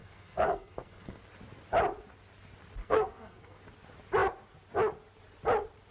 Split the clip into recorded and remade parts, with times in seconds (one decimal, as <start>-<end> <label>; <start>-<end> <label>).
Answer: 0.0-1.2 remade; 1.2-2.8 recorded; 2.8-3.6 remade; 3.6-5.9 recorded